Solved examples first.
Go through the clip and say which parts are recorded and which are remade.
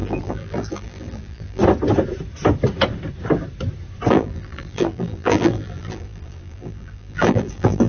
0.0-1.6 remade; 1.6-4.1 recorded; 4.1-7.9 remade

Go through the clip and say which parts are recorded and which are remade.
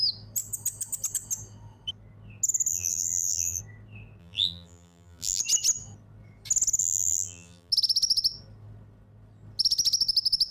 0.0-2.7 recorded; 2.7-3.6 remade; 3.6-4.2 recorded; 4.2-5.4 remade; 5.4-6.8 recorded; 6.8-7.7 remade; 7.7-10.5 recorded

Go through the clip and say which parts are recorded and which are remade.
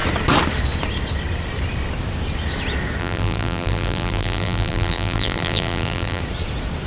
0.0-3.0 recorded; 3.0-6.2 remade; 6.2-6.9 recorded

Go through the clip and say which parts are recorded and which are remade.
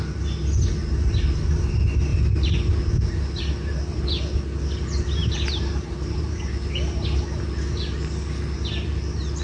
0.0-5.2 recorded; 5.2-6.5 remade; 6.5-9.4 recorded